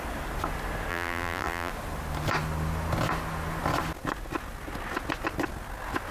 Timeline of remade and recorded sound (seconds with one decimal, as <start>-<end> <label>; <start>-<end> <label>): 0.0-0.9 recorded; 0.9-1.7 remade; 1.7-6.1 recorded